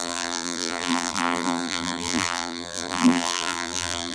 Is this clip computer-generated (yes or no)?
yes